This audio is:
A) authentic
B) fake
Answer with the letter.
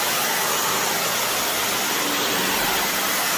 A